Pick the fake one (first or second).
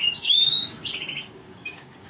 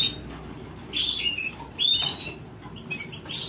first